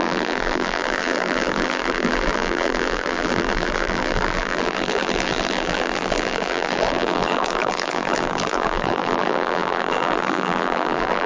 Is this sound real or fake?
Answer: fake